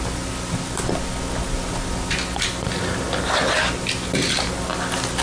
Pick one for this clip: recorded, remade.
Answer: recorded